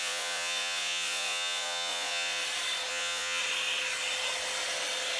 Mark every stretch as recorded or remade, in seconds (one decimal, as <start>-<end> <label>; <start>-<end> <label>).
0.0-2.4 remade; 2.4-2.9 recorded; 2.9-3.4 remade; 3.4-5.2 recorded

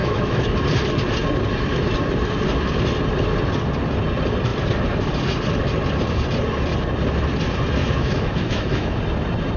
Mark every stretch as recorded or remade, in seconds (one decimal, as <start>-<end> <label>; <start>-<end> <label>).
0.0-0.6 remade; 0.6-7.8 recorded; 7.8-9.0 remade; 9.0-9.6 recorded

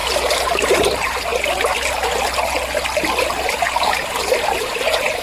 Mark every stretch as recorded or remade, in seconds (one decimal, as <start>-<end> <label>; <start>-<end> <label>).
0.0-0.8 recorded; 0.8-1.3 remade; 1.3-4.4 recorded; 4.4-5.2 remade